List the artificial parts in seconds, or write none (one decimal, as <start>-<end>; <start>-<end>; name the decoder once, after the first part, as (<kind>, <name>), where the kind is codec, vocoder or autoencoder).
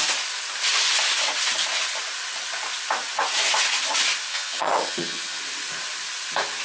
4.3-5.4 (vocoder, HiFi-GAN)